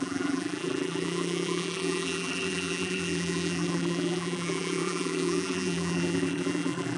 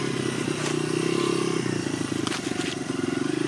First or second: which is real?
second